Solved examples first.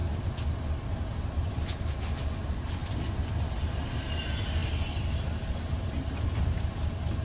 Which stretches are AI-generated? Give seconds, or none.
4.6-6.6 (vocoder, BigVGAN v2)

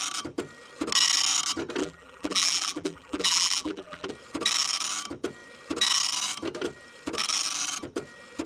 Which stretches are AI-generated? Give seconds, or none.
1.8-4.1 (vocoder, BigVGAN v2)

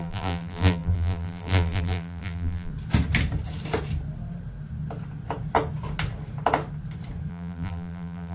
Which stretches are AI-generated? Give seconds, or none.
0.0-2.7 (vocoder, BigVGAN v2); 7.3-8.3

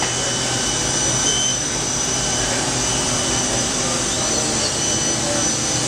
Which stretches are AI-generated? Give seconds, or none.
1.5-5.0 (vocoder, BigVGAN v2)

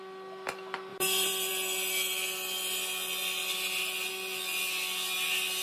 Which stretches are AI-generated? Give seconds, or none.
0.9-1.5 (vocoder, BigVGAN v2)

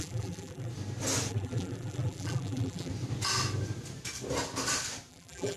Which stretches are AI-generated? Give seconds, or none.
0.0-0.7 (vocoder, BigVGAN v2); 1.3-2.9; 5.1-5.6

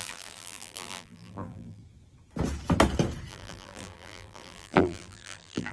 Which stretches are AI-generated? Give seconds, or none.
0.0-1.8 (vocoder, BigVGAN v2); 3.3-5.7

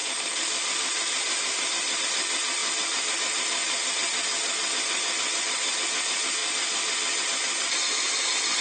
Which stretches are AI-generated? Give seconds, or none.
0.0-2.0 (vocoder, BigVGAN v2); 2.6-3.2; 6.4-7.2